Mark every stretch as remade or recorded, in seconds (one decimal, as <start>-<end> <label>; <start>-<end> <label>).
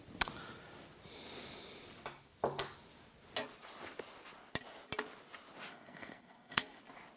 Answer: 0.0-5.7 recorded; 5.7-6.8 remade; 6.8-7.2 recorded